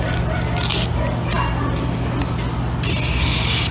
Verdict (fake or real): real